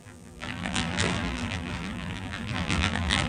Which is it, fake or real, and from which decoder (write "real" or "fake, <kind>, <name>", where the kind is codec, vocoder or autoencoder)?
fake, vocoder, BigVGAN v2